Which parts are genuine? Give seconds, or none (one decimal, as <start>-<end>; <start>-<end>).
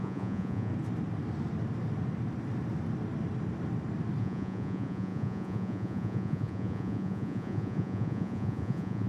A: 0.7-4.2